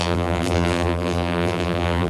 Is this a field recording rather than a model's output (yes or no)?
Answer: no